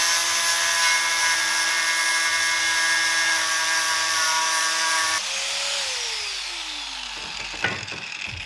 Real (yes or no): yes